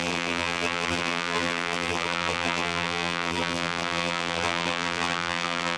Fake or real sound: fake